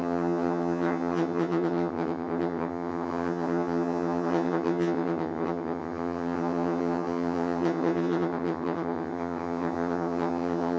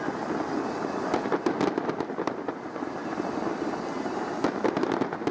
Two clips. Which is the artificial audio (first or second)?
first